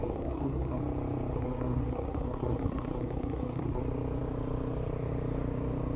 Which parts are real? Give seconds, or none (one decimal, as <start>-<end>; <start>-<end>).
0.8-1.3; 3.8-6.0